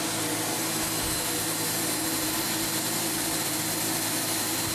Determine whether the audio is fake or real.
real